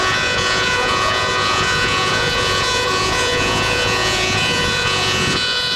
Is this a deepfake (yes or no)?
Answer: yes